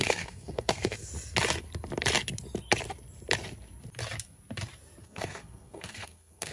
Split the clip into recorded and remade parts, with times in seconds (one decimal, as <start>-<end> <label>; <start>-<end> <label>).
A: 0.0-1.1 remade; 1.1-5.0 recorded; 5.0-6.5 remade